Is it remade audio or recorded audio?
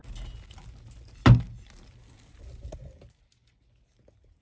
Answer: recorded